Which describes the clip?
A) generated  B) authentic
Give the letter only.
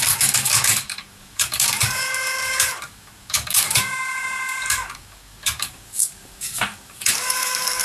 A